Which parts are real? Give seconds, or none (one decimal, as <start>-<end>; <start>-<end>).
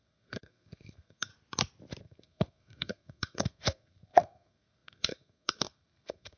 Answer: 1.3-2.0